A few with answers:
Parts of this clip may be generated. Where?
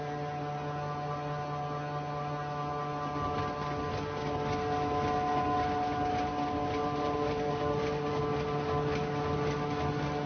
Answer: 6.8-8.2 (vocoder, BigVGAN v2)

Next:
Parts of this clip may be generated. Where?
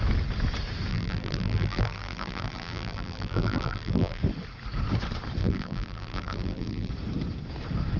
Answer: 0.9-4.2 (vocoder, BigVGAN v2); 5.4-6.9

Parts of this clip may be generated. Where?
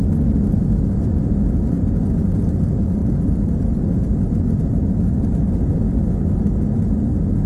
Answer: 3.0-6.0 (vocoder, BigVGAN v2)